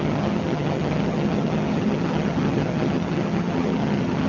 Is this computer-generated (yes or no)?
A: yes